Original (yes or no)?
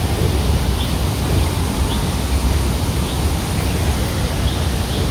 yes